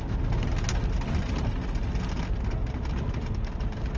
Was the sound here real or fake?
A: real